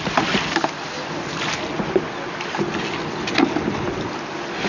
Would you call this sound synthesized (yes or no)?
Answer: no